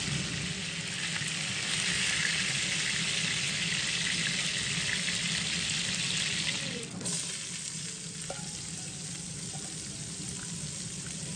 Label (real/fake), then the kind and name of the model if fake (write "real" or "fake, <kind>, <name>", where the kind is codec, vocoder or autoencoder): real